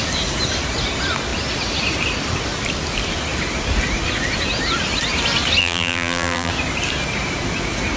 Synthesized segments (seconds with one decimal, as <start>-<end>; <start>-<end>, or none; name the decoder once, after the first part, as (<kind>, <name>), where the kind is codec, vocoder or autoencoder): 5.6-6.5 (vocoder, BigVGAN v2)